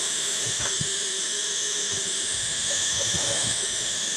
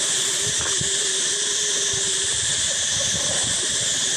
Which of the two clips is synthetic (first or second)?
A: first